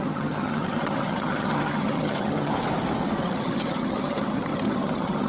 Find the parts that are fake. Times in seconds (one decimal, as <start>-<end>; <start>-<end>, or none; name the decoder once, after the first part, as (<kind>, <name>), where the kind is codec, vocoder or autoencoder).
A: 0.0-2.5 (vocoder, HiFi-GAN); 3.2-5.3